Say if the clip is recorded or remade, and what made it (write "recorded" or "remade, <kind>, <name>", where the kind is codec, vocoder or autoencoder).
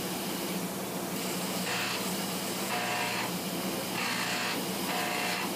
recorded